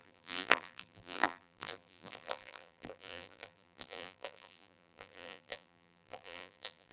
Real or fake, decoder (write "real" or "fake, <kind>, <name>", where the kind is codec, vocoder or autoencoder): fake, vocoder, BigVGAN v2